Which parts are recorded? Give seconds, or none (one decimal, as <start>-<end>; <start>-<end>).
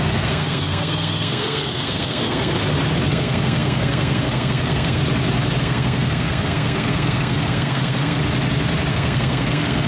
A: 2.6-3.1; 5.0-5.6; 8.2-8.9